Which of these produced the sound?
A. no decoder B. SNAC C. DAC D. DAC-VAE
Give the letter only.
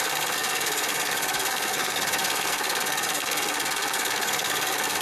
B